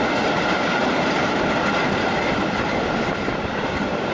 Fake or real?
fake